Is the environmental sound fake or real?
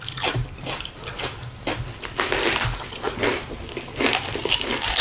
real